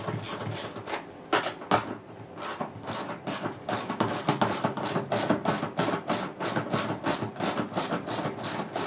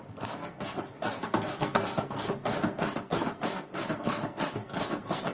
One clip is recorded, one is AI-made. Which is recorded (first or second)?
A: first